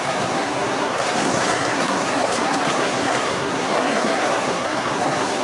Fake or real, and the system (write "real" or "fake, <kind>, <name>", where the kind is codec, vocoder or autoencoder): fake, codec, SNAC